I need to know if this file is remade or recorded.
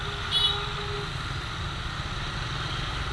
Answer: recorded